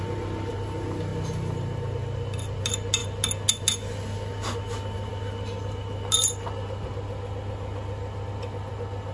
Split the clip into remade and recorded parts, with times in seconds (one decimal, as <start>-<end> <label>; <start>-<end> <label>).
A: 0.0-9.1 recorded